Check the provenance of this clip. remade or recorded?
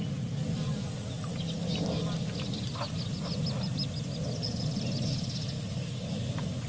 recorded